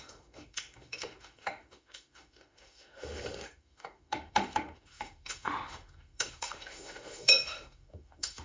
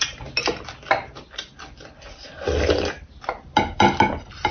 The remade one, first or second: first